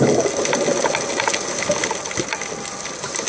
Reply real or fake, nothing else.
real